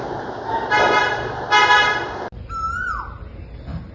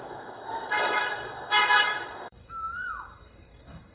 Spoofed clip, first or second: second